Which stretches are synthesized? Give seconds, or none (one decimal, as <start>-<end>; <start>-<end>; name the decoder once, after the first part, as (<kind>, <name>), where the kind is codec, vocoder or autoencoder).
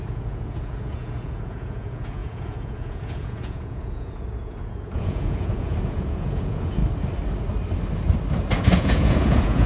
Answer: 0.0-6.8 (vocoder, Vocos); 8.8-9.7